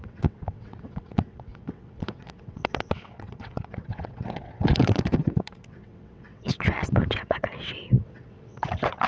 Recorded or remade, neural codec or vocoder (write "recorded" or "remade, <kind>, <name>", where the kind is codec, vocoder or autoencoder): remade, vocoder, WaveNeXt